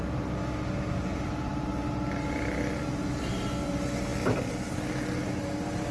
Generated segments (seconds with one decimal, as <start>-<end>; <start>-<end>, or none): none